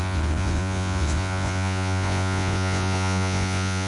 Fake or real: fake